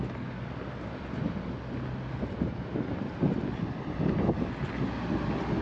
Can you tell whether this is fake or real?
real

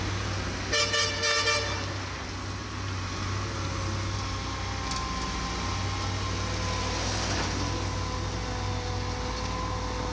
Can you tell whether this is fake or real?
real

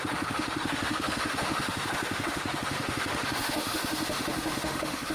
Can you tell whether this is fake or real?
fake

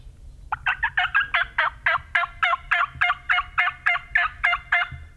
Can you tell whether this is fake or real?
real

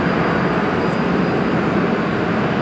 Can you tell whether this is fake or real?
real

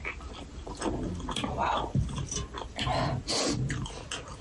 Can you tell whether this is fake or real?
real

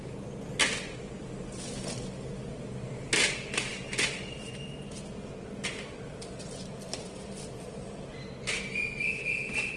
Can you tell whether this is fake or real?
real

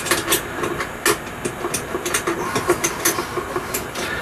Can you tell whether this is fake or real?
real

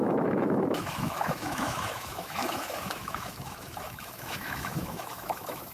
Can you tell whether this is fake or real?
fake